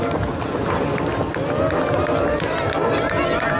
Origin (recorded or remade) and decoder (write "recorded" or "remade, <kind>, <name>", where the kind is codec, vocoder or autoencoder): recorded